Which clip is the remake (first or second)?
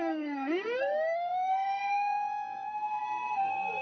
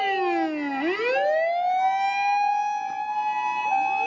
first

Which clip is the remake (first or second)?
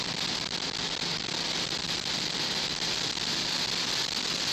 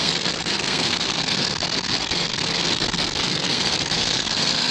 second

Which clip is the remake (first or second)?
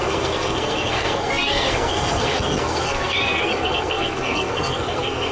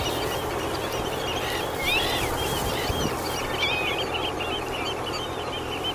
first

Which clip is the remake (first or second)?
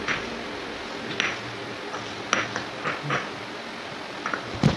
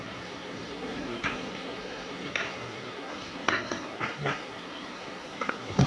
second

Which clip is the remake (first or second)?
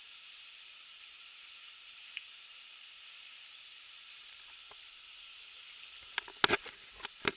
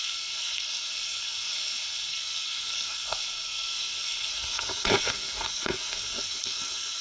second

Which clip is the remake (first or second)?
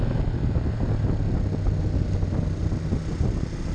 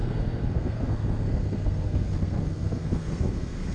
second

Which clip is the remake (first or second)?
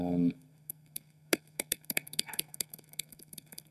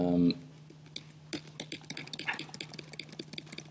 first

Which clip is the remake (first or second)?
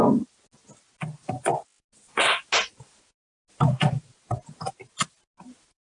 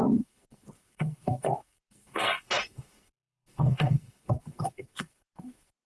second